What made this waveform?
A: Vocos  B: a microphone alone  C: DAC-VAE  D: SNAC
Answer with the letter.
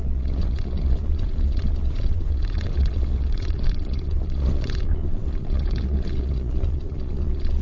A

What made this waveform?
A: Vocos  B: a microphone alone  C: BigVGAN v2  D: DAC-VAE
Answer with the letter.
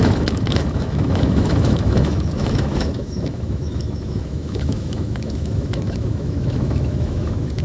D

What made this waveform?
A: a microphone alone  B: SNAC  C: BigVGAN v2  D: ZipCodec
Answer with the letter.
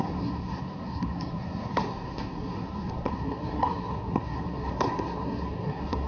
B